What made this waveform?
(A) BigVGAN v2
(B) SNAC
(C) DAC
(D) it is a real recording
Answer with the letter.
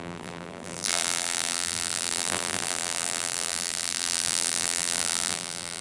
A